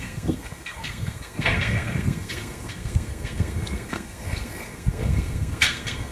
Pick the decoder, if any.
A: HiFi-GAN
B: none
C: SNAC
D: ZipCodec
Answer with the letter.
C